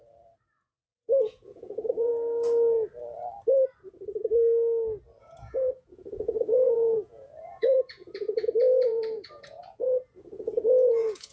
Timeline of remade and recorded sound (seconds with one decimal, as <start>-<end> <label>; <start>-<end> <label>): 0.0-2.1 remade; 2.1-5.2 recorded; 5.2-11.3 remade